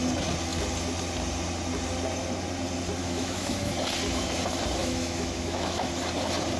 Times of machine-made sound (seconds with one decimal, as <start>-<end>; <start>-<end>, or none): 3.0-3.7; 4.8-5.9